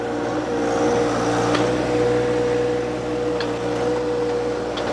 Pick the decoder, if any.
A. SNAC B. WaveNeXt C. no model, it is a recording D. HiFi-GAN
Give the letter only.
C